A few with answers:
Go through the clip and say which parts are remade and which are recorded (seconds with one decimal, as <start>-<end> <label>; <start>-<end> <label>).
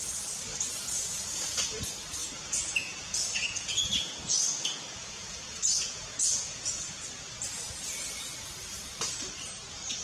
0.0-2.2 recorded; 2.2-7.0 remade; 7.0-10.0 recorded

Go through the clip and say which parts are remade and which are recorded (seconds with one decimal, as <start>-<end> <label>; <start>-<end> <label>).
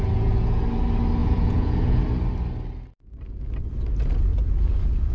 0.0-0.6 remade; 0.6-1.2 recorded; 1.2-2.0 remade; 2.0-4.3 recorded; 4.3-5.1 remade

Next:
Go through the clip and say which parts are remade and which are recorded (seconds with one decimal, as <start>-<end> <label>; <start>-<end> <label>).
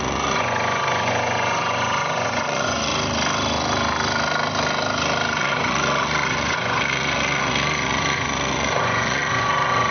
0.0-2.9 remade; 2.9-5.4 recorded; 5.4-9.9 remade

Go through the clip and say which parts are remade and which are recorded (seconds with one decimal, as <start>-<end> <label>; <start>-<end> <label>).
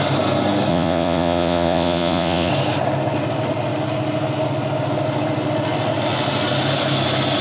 0.0-0.7 recorded; 0.7-2.5 remade; 2.5-7.4 recorded